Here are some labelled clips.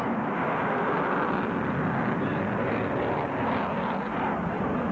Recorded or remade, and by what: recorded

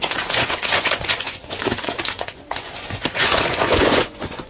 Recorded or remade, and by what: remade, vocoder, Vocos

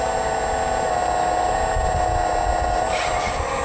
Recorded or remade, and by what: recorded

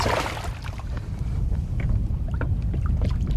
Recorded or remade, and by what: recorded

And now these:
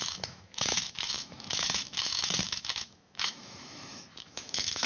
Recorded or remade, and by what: remade, autoencoder, DAC-VAE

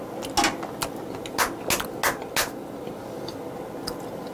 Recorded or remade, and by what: recorded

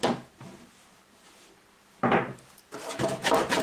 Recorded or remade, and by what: remade, vocoder, BigVGAN v2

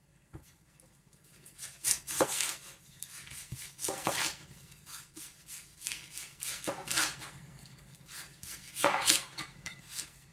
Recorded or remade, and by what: remade, codec, SNAC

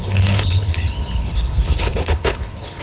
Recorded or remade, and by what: remade, codec, HILCodec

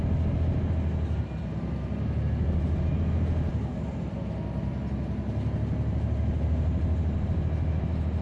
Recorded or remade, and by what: recorded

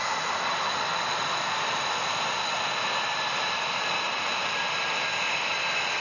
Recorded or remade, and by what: recorded